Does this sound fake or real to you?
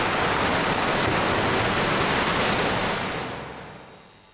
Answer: real